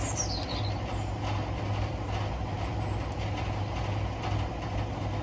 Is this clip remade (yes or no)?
no